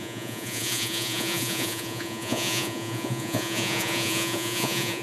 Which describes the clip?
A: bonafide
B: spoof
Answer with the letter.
B